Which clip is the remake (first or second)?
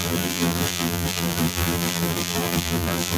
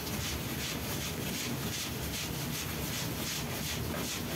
first